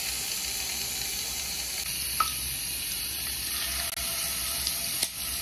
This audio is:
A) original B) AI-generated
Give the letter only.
A